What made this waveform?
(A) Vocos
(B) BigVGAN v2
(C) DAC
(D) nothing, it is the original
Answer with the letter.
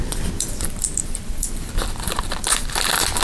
B